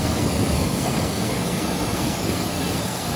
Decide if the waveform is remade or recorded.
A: remade